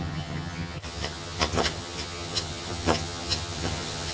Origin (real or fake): fake